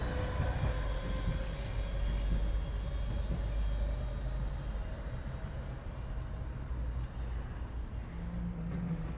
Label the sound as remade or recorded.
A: recorded